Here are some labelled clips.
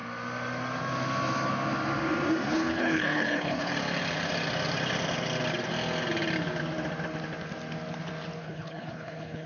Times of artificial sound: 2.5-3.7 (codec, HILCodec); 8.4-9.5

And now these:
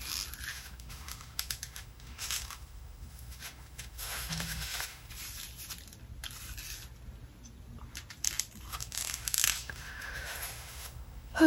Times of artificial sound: 0.5-5.1 (autoencoder, DAC-VAE); 8.7-11.5

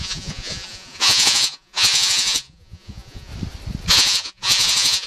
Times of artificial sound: 0.0-3.3 (vocoder, Vocos); 3.9-5.1